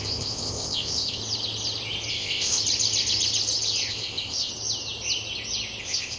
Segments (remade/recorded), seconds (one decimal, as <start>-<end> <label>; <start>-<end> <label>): 0.0-1.2 remade; 1.2-2.1 recorded; 2.1-2.6 remade; 2.6-3.9 recorded; 3.9-4.5 remade; 4.5-5.8 recorded; 5.8-6.2 remade